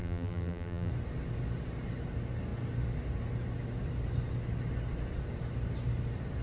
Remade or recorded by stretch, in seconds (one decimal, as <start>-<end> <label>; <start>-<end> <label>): 0.0-0.9 remade; 0.9-6.4 recorded